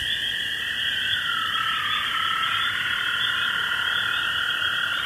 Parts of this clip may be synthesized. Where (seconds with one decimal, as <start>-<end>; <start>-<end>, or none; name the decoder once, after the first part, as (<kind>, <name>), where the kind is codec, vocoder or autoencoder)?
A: none